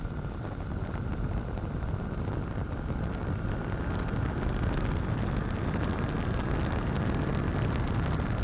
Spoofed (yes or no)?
no